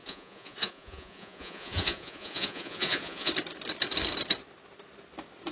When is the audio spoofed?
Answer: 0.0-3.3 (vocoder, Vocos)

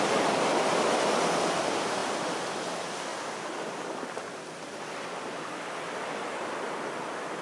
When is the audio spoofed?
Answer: none

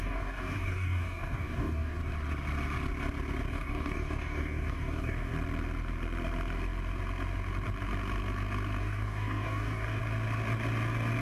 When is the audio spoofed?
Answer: 0.0-2.0 (codec, DAC); 3.5-5.3; 8.8-10.0

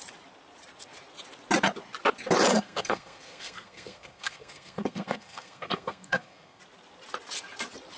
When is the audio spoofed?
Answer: 2.5-6.6 (codec, SNAC)

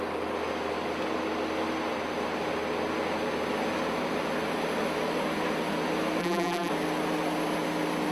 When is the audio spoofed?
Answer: 6.2-6.7 (vocoder, BigVGAN v2)

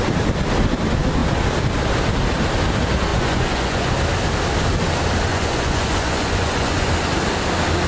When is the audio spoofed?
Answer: 3.1-3.9 (vocoder, Vocos); 5.3-6.9